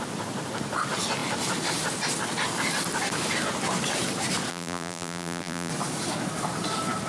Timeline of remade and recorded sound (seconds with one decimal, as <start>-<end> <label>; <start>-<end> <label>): 0.0-4.5 recorded; 4.5-5.7 remade; 5.7-7.1 recorded